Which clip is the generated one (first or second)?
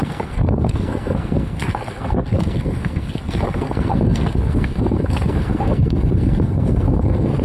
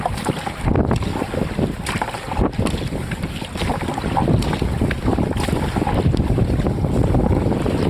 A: first